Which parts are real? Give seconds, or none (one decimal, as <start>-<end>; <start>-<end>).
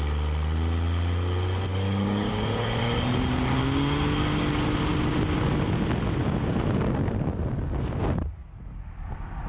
0.0-1.7; 2.8-3.6; 4.4-9.5